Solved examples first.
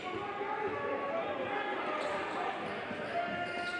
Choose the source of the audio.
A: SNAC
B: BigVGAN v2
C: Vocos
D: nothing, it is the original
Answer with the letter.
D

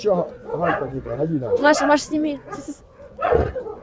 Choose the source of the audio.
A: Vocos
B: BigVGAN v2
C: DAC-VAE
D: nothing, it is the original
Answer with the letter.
A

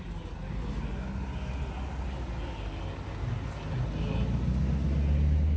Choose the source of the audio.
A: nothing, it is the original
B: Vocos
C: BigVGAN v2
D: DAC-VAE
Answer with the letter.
A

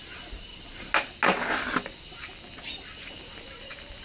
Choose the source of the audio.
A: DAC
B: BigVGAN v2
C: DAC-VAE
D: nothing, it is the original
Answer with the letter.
D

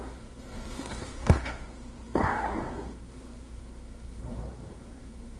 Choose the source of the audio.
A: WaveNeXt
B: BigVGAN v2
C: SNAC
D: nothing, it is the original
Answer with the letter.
C